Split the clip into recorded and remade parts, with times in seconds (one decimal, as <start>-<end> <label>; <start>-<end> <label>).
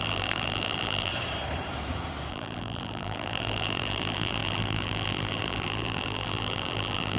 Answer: 0.0-1.1 remade; 1.1-2.3 recorded; 2.3-7.2 remade